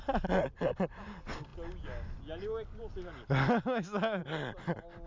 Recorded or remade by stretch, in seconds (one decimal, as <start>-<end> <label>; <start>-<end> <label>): 0.0-5.1 recorded